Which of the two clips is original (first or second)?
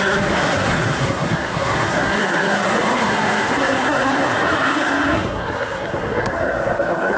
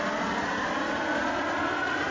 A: second